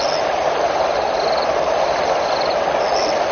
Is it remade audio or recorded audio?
recorded